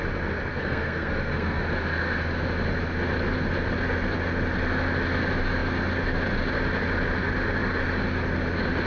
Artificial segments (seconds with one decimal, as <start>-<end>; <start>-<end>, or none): 0.5-1.6